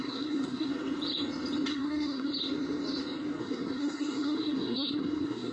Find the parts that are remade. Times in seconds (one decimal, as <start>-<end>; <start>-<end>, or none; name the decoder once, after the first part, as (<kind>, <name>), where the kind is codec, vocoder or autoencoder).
0.0-0.7 (codec, SNAC); 1.7-2.3; 3.4-5.5